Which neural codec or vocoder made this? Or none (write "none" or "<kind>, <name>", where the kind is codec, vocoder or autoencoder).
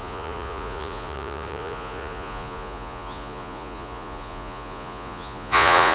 vocoder, Vocos